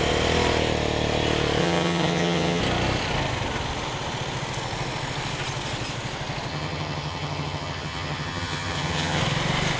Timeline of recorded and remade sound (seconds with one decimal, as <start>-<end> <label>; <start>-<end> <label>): 0.0-1.6 recorded; 1.6-2.6 remade; 2.6-6.5 recorded; 6.5-9.2 remade; 9.2-9.8 recorded